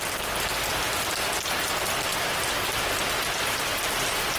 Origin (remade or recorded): recorded